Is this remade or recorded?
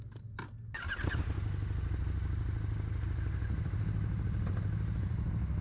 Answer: recorded